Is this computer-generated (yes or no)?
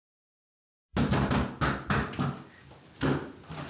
no